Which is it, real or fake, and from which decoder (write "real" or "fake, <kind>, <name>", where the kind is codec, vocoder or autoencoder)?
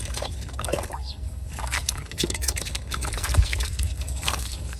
fake, codec, SNAC